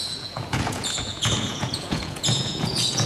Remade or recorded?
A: remade